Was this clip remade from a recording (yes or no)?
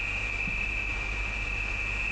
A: no